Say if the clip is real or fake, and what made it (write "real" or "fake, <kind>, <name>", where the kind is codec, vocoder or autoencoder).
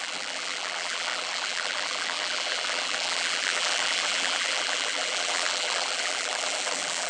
fake, vocoder, BigVGAN v2